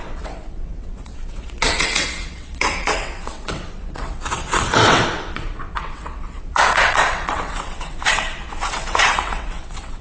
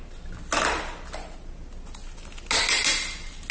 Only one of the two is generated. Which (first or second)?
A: first